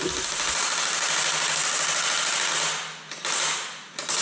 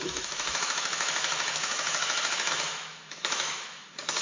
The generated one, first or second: second